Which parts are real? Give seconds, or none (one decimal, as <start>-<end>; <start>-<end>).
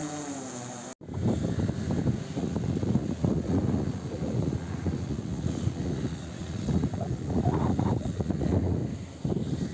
0.0-2.4; 8.8-9.7